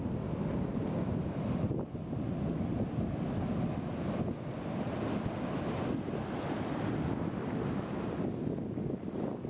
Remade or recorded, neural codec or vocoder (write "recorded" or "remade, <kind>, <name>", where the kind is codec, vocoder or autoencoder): recorded